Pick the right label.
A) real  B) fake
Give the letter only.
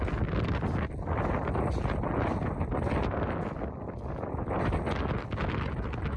A